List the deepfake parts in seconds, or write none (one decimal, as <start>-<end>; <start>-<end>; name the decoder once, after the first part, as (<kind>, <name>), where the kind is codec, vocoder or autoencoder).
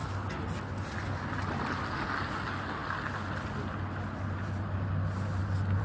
none